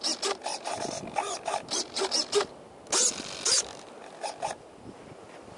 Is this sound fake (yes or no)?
no